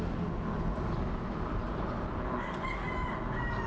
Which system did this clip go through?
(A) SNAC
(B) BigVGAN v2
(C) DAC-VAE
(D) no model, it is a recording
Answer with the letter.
D